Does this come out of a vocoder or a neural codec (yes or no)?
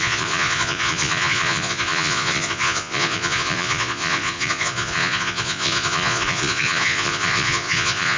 yes